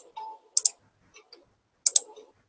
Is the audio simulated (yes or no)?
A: no